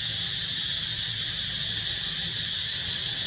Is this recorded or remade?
recorded